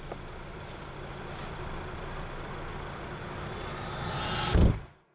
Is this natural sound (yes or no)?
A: yes